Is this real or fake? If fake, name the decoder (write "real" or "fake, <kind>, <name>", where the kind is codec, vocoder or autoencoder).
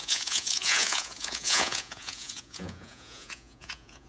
fake, vocoder, Vocos